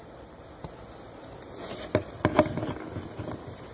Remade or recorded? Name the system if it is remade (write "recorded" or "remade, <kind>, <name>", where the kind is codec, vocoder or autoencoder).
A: recorded